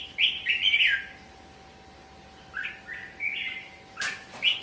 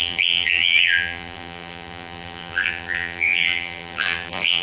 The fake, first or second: second